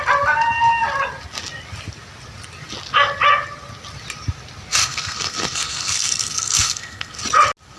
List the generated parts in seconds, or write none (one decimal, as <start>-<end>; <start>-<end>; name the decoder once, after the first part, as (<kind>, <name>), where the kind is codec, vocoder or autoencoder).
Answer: 4.8-7.2 (codec, SNAC)

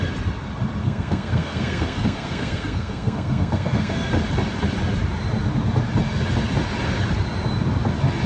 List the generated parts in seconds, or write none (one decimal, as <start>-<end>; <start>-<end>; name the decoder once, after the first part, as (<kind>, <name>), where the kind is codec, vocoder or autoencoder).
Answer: 0.8-4.1 (codec, SNAC)

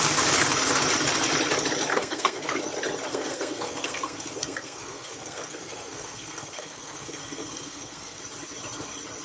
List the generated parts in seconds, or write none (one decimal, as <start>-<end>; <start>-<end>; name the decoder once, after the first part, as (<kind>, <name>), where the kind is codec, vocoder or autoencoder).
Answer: 1.9-2.6 (codec, SNAC); 3.1-8.2

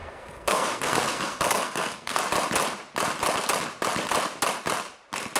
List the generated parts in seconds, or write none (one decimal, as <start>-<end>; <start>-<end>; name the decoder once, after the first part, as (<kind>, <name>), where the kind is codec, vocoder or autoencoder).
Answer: 0.0-2.2 (codec, SNAC)

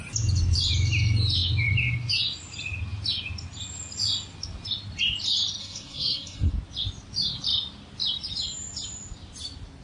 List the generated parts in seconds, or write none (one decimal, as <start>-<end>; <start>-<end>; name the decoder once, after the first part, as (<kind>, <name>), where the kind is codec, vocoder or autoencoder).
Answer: 5.6-6.5 (codec, SNAC)

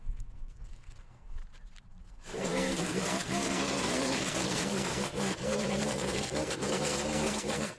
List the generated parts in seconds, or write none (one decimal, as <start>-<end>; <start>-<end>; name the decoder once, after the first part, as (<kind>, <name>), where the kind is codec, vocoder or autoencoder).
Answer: 0.0-1.4 (codec, SNAC); 2.0-7.8

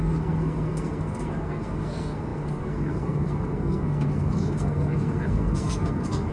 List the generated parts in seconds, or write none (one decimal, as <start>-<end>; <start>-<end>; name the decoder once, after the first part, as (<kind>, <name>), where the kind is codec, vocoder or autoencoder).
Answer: 0.0-6.3 (codec, SNAC)